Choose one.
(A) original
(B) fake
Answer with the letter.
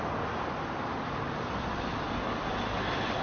A